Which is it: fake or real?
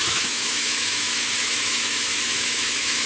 fake